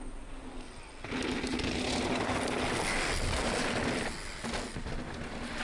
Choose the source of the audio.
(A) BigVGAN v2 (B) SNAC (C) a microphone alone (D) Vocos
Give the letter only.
C